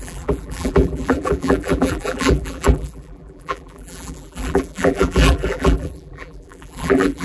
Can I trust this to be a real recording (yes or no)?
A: no